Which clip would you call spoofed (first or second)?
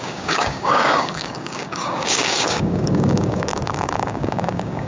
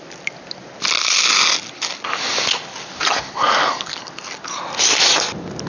first